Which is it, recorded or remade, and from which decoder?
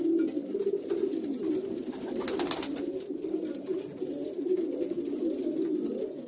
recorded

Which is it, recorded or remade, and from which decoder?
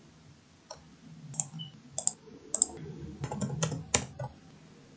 recorded